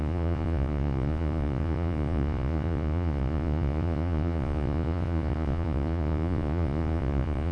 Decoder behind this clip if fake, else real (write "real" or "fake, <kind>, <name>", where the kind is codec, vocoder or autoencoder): fake, vocoder, Vocos